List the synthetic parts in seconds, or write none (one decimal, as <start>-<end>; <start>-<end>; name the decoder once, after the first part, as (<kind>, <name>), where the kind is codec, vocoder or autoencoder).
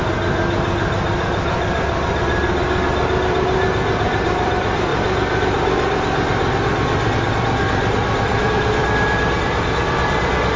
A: 3.2-10.6 (vocoder, BigVGAN v2)